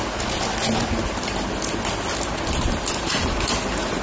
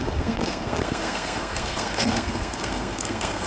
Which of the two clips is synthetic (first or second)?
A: second